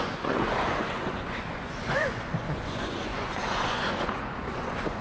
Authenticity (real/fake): fake